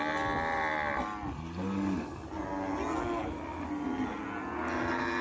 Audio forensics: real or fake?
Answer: real